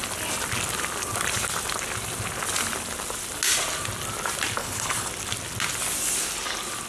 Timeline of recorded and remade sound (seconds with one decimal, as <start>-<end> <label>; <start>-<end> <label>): 0.0-4.6 recorded; 4.6-5.1 remade; 5.1-6.9 recorded

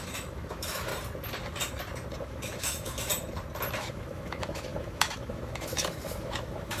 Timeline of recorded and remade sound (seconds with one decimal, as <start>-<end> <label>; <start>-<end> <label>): 0.0-0.9 remade; 0.9-2.2 recorded; 2.2-3.1 remade; 3.1-3.8 recorded; 3.8-6.8 remade

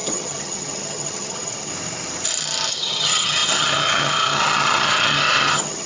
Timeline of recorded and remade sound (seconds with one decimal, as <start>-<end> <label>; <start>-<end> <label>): 0.0-1.7 remade; 1.7-2.7 recorded; 2.7-5.9 remade

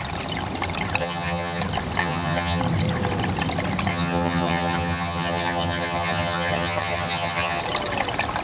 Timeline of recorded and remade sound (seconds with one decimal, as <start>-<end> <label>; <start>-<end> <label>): 0.0-1.0 recorded; 1.0-1.6 remade; 1.6-2.0 recorded; 2.0-2.6 remade; 2.6-3.9 recorded; 3.9-7.6 remade; 7.6-8.4 recorded